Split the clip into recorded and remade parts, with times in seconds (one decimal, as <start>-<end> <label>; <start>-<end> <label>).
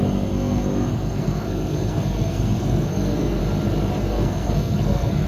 0.0-3.4 remade; 3.4-4.0 recorded; 4.0-5.3 remade